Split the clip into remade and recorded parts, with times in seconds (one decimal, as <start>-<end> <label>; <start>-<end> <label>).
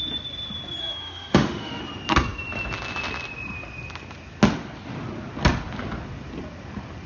0.0-0.8 recorded; 0.8-1.8 remade; 1.8-7.1 recorded